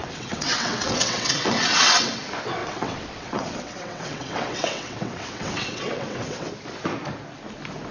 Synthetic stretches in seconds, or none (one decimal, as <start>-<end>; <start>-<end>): 0.0-2.2; 2.6-6.5